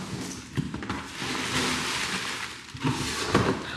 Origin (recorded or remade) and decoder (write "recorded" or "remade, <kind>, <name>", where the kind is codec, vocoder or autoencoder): recorded